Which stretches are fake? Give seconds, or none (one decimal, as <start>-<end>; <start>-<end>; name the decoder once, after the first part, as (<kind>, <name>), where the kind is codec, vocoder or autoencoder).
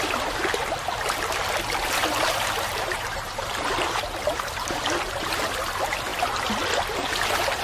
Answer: 2.0-4.8 (vocoder, BigVGAN v2)